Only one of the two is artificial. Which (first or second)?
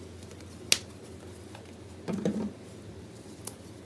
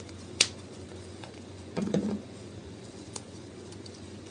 second